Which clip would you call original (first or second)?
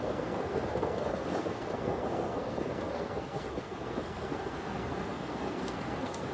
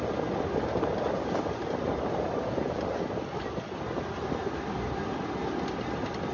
second